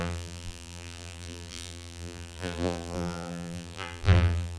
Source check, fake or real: fake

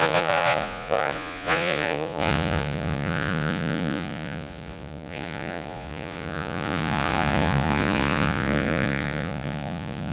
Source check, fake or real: fake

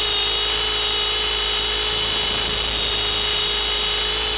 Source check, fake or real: real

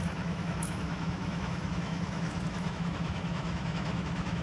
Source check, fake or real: fake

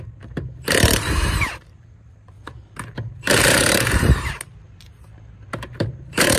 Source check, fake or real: fake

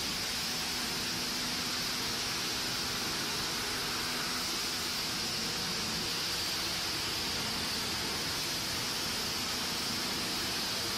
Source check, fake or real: real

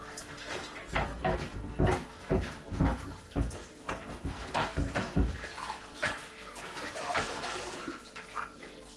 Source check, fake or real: fake